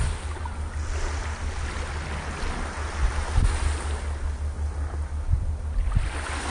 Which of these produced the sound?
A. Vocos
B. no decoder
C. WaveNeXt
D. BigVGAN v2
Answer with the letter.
B